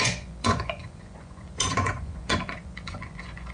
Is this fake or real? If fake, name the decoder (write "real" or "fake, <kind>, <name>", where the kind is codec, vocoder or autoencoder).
fake, vocoder, Vocos